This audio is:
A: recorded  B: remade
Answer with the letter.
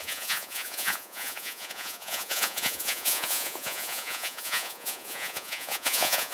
B